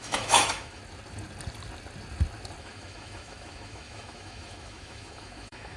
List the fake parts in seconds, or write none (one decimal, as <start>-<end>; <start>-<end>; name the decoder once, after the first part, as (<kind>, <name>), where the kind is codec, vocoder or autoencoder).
0.0-0.8 (autoencoder, DAC-VAE); 2.6-5.8